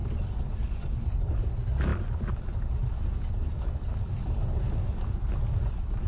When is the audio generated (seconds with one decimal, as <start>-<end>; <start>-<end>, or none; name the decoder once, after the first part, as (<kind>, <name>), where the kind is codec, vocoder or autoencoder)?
none